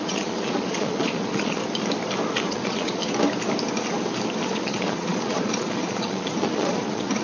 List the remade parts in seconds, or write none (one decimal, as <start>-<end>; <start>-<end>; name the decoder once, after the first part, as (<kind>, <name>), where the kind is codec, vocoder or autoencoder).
0.0-1.6 (vocoder, Vocos); 2.3-3.0; 4.4-7.2